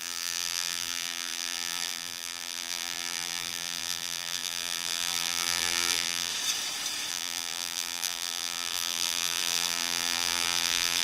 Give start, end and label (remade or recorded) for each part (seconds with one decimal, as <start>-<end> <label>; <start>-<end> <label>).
0.0-6.3 remade; 6.3-7.1 recorded; 7.1-11.0 remade